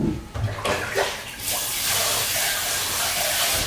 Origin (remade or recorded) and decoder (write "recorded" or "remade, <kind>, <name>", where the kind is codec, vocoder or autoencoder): recorded